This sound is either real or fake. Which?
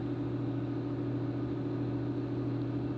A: real